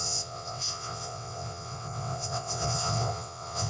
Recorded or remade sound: remade